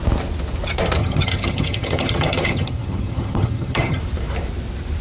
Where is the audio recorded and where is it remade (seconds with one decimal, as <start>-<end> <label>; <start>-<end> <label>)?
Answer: 0.0-1.0 recorded; 1.0-4.0 remade; 4.0-5.0 recorded